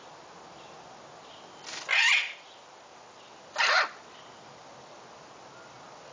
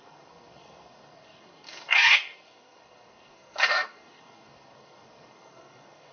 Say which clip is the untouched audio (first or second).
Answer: first